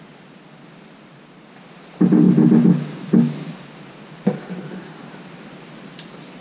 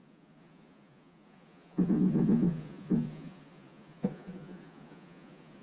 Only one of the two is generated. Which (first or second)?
second